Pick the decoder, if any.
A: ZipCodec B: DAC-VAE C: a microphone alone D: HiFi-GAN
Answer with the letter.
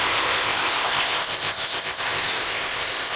A